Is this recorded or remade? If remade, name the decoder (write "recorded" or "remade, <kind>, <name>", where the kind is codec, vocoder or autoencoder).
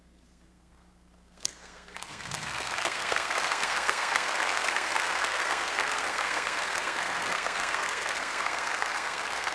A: remade, codec, SNAC